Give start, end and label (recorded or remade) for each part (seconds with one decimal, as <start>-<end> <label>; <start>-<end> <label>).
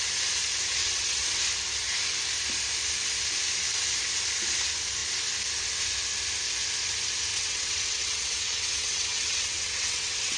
0.0-0.8 recorded; 0.8-1.4 remade; 1.4-7.3 recorded; 7.3-10.4 remade